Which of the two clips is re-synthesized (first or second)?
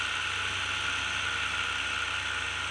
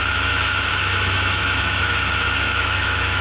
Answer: second